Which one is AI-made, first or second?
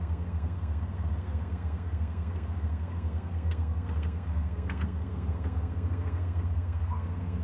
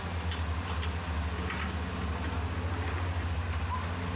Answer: first